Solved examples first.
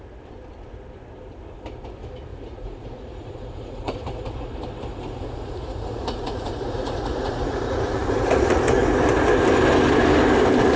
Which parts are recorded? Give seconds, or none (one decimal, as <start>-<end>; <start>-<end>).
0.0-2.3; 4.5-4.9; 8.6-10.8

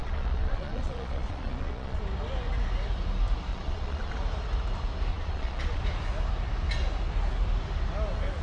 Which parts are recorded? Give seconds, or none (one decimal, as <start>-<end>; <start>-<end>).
2.0-3.5; 4.1-5.1; 5.8-8.4

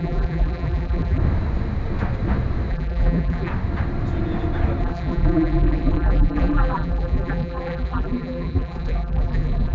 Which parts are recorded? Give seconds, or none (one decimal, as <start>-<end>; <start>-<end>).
1.2-2.7; 3.5-4.8